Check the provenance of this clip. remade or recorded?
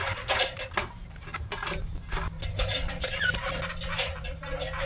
recorded